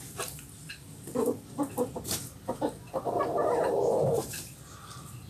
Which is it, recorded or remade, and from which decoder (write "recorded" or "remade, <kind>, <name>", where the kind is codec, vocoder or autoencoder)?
recorded